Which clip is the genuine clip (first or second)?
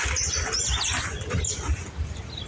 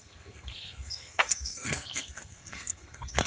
first